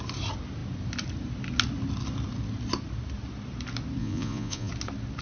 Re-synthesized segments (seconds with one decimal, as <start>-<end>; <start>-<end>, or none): 4.0-4.7